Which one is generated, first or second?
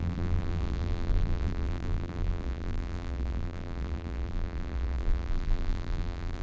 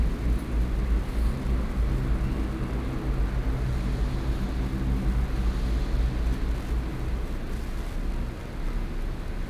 first